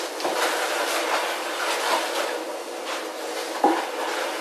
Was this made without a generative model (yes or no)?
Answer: yes